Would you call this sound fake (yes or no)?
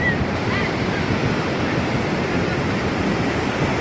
yes